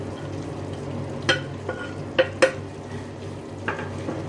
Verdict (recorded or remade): recorded